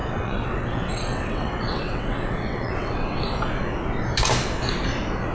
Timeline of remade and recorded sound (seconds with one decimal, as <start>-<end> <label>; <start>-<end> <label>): 0.0-3.2 remade; 3.2-5.3 recorded